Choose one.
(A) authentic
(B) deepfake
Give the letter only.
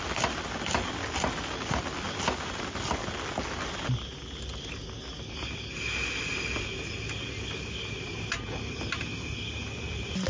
A